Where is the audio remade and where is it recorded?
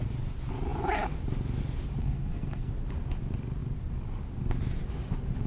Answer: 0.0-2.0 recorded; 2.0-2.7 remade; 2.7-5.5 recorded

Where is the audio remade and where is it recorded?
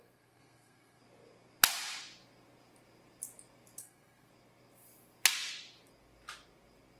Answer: 0.0-1.0 remade; 1.0-3.8 recorded; 3.8-4.3 remade; 4.3-7.0 recorded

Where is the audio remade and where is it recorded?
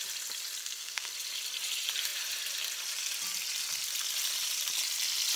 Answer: 0.0-0.6 recorded; 0.6-1.1 remade; 1.1-5.4 recorded